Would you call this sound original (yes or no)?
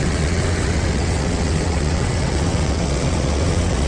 no